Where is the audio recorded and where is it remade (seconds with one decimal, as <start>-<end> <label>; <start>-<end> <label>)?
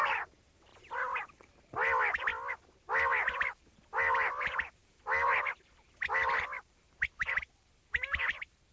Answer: 0.0-0.7 remade; 0.7-1.6 recorded; 1.6-2.3 remade; 2.3-3.1 recorded; 3.1-4.8 remade; 4.8-5.4 recorded; 5.4-8.7 remade